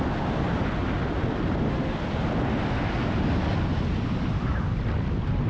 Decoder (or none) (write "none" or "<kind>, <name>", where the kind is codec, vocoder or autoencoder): none